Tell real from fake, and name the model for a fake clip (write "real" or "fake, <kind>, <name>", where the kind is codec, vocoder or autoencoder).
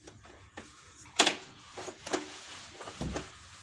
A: fake, vocoder, Vocos